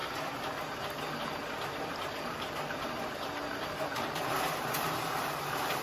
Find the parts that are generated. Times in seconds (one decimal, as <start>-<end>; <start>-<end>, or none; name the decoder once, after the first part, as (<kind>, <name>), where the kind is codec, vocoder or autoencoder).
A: 1.2-5.8 (vocoder, BigVGAN v2)